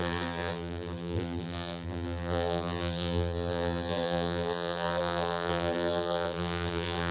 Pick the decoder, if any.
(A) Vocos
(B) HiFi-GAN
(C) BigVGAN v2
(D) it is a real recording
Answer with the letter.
C